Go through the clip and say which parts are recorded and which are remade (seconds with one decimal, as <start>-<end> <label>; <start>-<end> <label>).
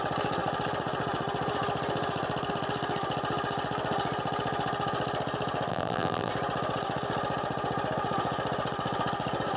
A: 0.0-5.7 recorded; 5.7-6.3 remade; 6.3-9.6 recorded